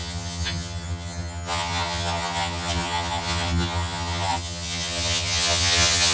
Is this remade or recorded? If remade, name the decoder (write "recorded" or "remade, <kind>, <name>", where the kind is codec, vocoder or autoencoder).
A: remade, vocoder, HiFi-GAN